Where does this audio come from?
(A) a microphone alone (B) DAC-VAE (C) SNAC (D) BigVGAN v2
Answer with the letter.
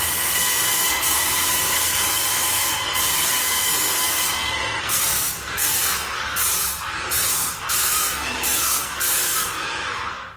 C